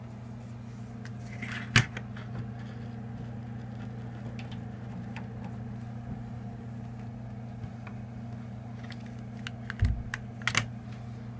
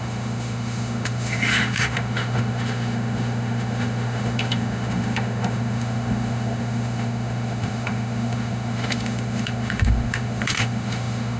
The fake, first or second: second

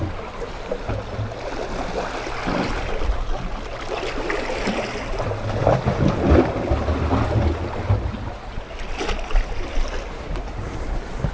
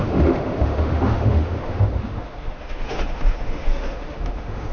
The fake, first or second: second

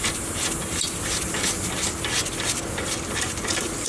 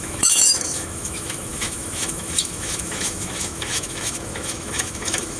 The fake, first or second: second